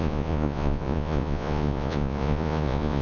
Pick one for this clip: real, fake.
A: fake